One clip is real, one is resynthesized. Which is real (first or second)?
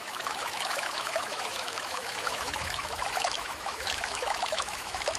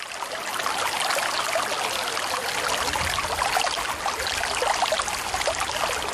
second